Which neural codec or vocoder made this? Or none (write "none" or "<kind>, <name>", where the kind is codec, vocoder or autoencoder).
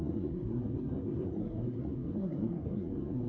codec, SNAC